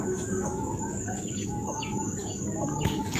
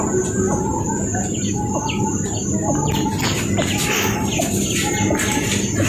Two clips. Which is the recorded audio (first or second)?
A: second